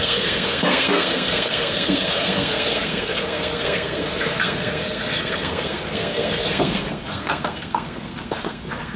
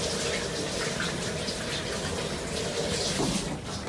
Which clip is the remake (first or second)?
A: first